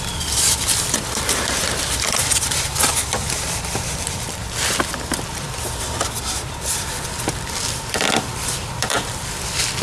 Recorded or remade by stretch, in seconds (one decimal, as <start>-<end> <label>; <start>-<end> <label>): 0.0-4.4 remade; 4.4-5.2 recorded; 5.2-9.8 remade